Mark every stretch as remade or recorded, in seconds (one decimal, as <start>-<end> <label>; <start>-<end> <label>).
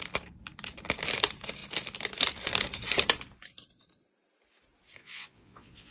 0.0-5.0 recorded; 5.0-5.9 remade